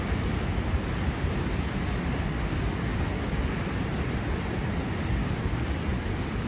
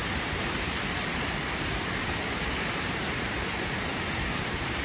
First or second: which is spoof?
second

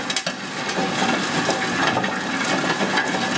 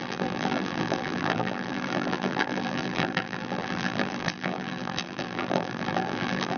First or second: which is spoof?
second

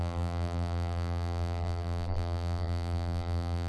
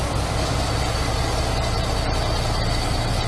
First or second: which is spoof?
first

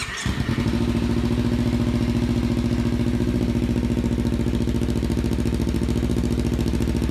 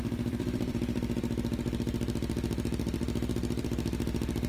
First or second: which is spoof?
second